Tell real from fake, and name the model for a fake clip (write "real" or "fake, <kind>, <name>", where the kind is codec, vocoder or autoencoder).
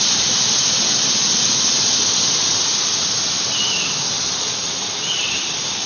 real